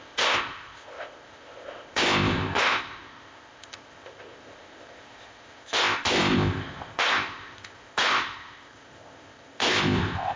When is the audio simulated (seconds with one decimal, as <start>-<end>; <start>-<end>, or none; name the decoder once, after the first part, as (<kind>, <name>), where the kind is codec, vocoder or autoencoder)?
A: 0.0-10.4 (codec, ZipCodec)